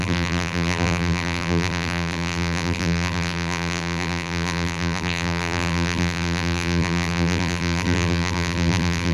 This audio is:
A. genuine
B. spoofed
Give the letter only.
B